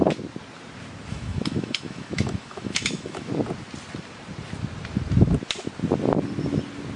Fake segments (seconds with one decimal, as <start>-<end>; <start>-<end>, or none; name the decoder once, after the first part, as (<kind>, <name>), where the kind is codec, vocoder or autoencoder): 1.1-3.3 (autoencoder, DAC-VAE)